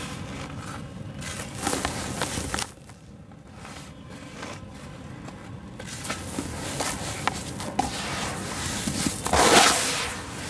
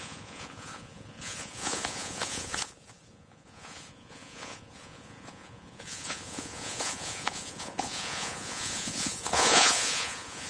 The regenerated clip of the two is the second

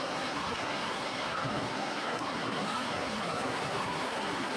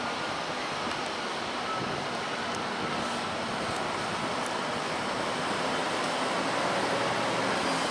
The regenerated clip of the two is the first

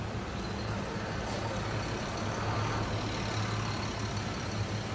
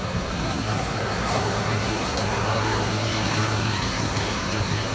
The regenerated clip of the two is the second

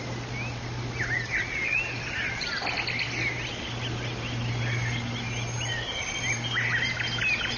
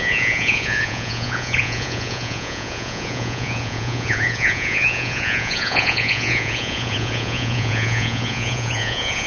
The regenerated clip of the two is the second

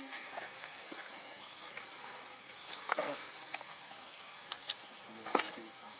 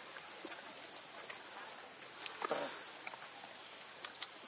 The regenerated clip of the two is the first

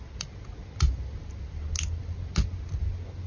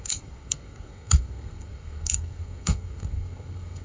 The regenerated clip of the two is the second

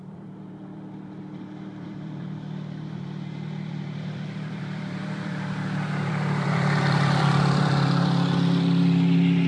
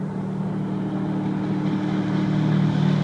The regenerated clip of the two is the first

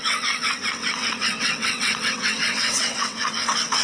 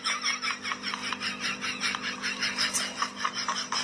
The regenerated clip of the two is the first